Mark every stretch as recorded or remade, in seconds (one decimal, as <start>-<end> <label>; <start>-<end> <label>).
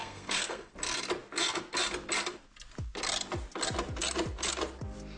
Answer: 0.0-0.7 remade; 0.7-5.2 recorded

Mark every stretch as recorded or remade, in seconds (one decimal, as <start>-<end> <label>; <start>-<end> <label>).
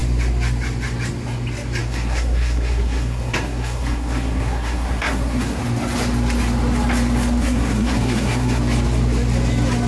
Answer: 0.0-1.8 recorded; 1.8-5.6 remade; 5.6-7.4 recorded; 7.4-8.6 remade; 8.6-9.9 recorded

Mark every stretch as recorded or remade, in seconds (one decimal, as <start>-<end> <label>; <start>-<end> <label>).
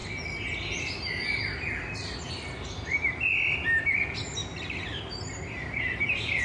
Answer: 0.0-6.4 recorded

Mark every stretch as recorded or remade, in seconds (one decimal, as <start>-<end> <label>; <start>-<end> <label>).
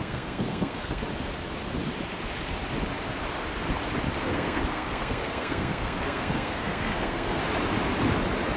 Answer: 0.0-1.0 remade; 1.0-4.2 recorded; 4.2-7.4 remade; 7.4-8.6 recorded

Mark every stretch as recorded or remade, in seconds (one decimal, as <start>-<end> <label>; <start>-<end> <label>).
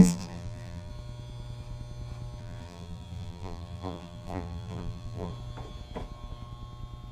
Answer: 0.0-0.9 remade; 0.9-2.4 recorded; 2.4-5.3 remade; 5.3-7.1 recorded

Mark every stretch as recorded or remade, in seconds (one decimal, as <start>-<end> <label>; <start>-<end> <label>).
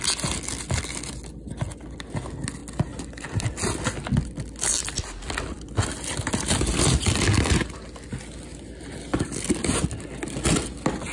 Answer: 0.0-8.5 recorded; 8.5-10.0 remade; 10.0-11.1 recorded